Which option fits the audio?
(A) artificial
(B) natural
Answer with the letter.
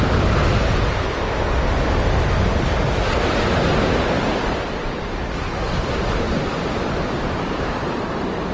B